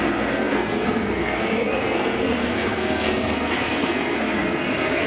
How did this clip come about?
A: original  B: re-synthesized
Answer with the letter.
B